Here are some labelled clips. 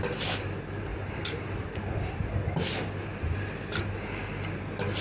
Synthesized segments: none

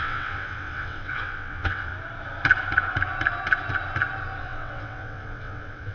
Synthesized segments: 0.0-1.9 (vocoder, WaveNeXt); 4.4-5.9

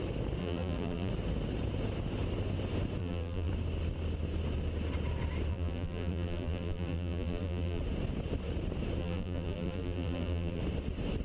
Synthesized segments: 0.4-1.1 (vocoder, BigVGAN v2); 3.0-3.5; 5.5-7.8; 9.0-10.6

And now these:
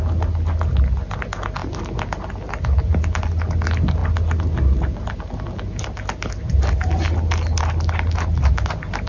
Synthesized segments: none

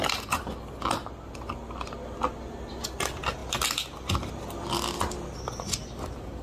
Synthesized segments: none

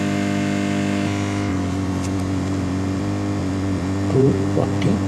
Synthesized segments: 1.5-3.0 (vocoder, Vocos); 3.4-5.1

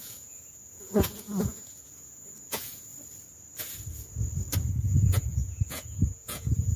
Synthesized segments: 0.0-2.9 (vocoder, Vocos); 4.7-6.8

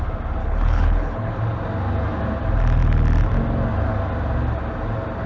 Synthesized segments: 0.4-1.4 (codec, HILCodec)